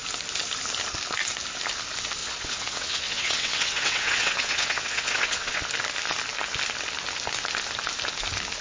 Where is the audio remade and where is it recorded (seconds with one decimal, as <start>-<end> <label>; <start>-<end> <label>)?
0.0-2.2 recorded; 2.2-5.6 remade; 5.6-8.6 recorded